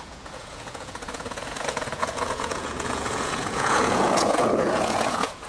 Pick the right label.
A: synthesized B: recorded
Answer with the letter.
A